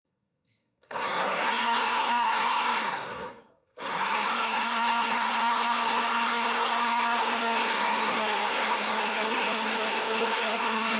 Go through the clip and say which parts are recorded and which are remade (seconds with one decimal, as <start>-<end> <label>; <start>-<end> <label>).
0.0-11.0 remade